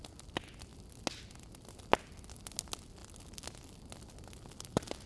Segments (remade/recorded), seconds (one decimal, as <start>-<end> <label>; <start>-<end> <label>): 0.0-5.1 recorded